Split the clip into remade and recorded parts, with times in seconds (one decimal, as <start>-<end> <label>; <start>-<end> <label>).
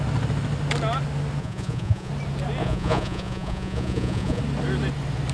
0.0-1.4 recorded; 1.4-2.1 remade; 2.1-2.6 recorded; 2.6-4.4 remade; 4.4-5.3 recorded